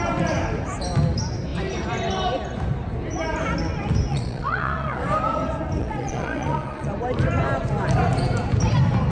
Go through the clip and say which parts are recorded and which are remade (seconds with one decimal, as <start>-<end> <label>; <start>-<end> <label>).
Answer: 0.0-4.1 recorded; 4.1-5.0 remade; 5.0-5.8 recorded; 5.8-6.9 remade; 6.9-9.1 recorded